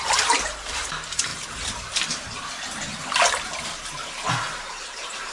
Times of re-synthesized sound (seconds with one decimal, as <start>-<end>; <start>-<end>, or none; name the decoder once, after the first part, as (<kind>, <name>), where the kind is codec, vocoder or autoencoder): 0.0-1.3 (vocoder, BigVGAN v2); 4.3-5.3